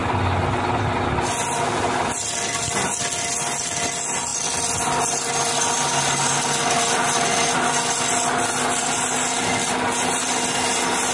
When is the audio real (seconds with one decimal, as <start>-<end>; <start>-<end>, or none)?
0.0-11.1